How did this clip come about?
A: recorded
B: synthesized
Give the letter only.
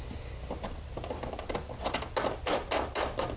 A